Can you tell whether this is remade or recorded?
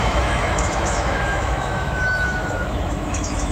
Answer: remade